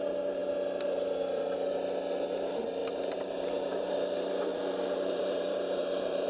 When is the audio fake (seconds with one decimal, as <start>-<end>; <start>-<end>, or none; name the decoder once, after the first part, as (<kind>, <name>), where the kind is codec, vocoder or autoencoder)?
2.8-3.9 (vocoder, BigVGAN v2); 4.5-6.3